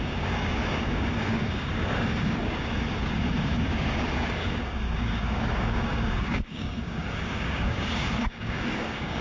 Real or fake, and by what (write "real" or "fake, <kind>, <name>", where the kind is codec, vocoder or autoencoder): fake, codec, DAC